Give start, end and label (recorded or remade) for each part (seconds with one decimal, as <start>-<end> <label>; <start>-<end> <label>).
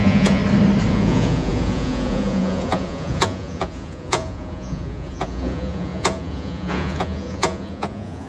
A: 0.0-0.4 remade; 0.4-0.9 recorded; 0.9-8.3 remade